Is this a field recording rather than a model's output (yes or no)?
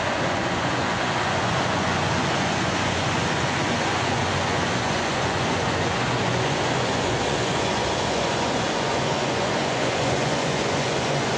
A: no